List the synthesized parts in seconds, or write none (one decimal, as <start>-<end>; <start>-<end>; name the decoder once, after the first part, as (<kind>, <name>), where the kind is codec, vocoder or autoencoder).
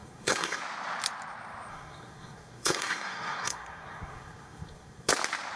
0.0-0.6 (codec, SNAC); 1.7-5.1